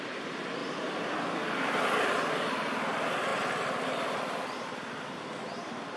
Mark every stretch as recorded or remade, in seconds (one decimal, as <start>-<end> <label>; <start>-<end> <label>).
0.0-0.6 remade; 0.6-2.0 recorded; 2.0-3.3 remade; 3.3-3.8 recorded; 3.8-6.0 remade